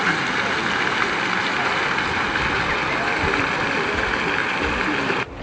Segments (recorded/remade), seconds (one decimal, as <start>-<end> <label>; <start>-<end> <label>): 0.0-5.4 recorded